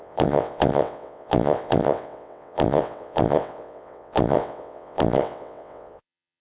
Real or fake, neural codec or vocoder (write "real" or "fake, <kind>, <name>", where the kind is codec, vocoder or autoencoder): fake, vocoder, WaveNeXt